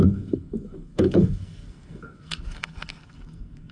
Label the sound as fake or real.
fake